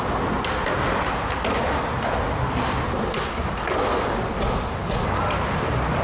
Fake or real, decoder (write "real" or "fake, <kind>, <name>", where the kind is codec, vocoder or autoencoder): real